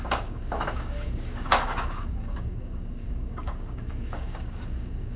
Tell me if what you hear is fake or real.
fake